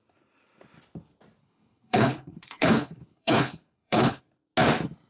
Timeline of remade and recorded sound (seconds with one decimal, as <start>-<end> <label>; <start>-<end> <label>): 0.0-1.4 recorded; 1.4-4.2 remade; 4.2-5.1 recorded